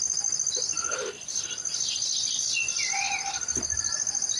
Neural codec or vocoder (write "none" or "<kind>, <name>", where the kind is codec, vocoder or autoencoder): none